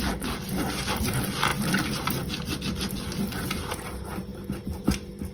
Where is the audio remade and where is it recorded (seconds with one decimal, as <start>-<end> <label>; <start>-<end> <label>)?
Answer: 0.0-5.3 recorded